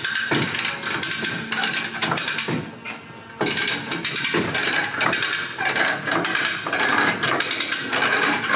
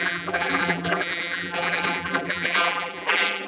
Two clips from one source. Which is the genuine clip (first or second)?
first